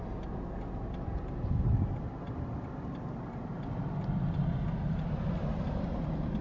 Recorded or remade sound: recorded